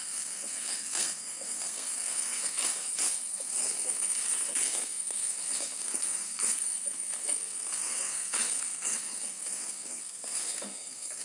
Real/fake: fake